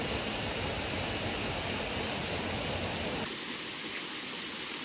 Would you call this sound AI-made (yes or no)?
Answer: no